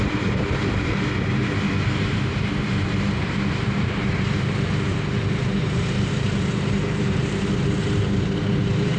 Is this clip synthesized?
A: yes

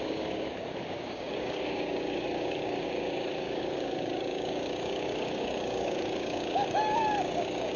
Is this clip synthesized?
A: yes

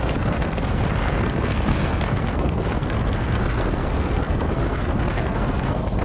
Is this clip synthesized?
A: yes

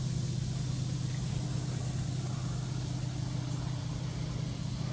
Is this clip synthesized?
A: no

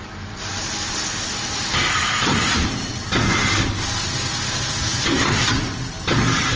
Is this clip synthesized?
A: no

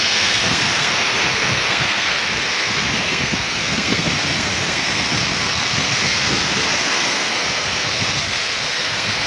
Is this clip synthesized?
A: yes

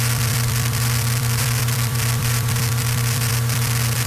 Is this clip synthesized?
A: yes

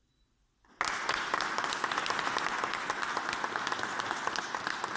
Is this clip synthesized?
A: no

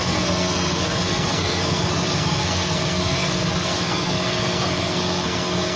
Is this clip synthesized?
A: yes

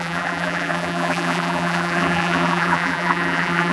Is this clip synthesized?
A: yes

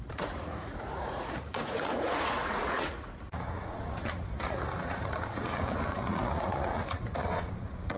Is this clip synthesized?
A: yes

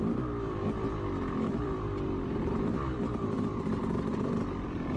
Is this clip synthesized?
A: yes